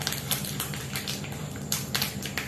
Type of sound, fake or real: real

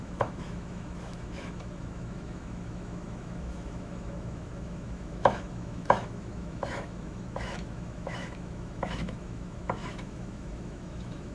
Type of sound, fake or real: fake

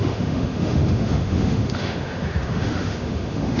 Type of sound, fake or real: fake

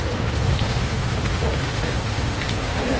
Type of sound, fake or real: fake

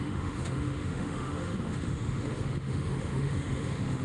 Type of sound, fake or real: fake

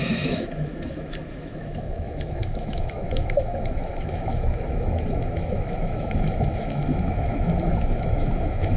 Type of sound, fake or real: fake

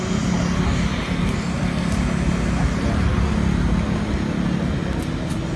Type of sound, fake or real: real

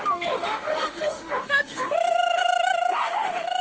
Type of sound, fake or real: fake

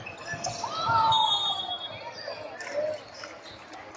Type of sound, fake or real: real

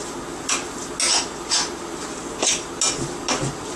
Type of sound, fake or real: real